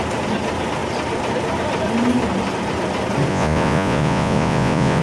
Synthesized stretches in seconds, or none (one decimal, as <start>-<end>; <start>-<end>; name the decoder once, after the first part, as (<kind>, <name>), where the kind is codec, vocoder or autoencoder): 3.3-5.0 (vocoder, Vocos)